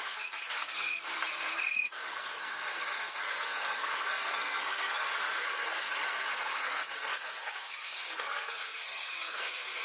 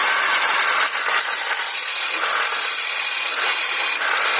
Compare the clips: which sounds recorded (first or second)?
second